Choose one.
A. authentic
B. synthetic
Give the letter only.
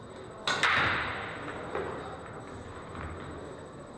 A